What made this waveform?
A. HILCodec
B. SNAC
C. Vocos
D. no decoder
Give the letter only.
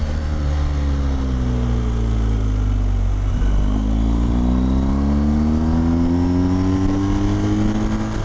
D